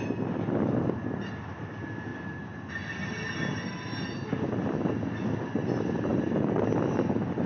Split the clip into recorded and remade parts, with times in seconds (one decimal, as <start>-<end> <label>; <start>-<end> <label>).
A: 0.0-2.1 recorded; 2.1-2.7 remade; 2.7-6.1 recorded; 6.1-6.6 remade; 6.6-7.5 recorded

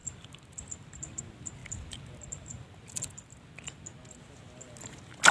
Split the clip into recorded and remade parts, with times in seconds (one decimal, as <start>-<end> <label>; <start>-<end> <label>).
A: 0.0-1.2 remade; 1.2-1.6 recorded; 1.6-3.1 remade; 3.1-5.3 recorded

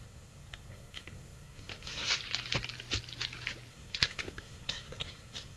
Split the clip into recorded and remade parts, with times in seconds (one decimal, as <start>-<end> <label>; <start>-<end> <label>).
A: 0.0-2.2 remade; 2.2-3.7 recorded; 3.7-5.6 remade

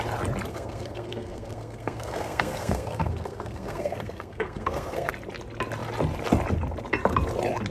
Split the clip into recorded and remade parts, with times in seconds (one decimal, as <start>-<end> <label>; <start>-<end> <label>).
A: 0.0-0.5 recorded; 0.5-5.1 remade; 5.1-7.7 recorded

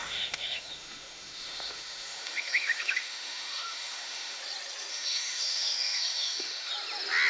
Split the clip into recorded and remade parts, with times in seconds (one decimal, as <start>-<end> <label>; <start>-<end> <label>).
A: 0.0-4.4 remade; 4.4-4.9 recorded; 4.9-6.7 remade; 6.7-7.3 recorded

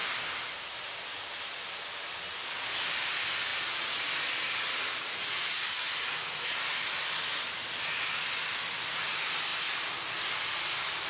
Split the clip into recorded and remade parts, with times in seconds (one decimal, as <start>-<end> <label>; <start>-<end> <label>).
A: 0.0-11.1 recorded

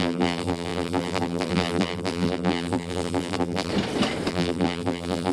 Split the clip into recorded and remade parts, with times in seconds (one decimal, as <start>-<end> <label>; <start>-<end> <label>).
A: 0.0-3.7 remade; 3.7-4.3 recorded; 4.3-5.3 remade